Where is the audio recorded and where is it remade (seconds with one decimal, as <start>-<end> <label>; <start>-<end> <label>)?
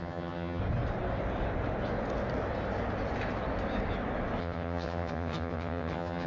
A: 0.0-0.6 remade; 0.6-4.4 recorded; 4.4-6.3 remade